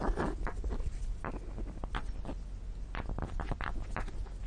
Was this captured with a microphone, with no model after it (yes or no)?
yes